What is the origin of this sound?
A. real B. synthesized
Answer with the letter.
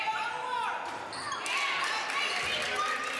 A